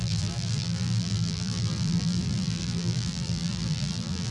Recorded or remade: remade